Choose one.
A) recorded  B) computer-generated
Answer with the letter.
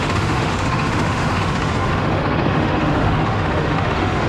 B